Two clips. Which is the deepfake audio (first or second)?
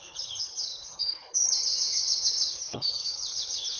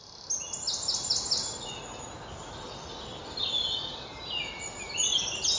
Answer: first